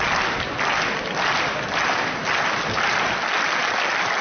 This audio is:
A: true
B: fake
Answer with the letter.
A